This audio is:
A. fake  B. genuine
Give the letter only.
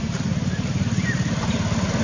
A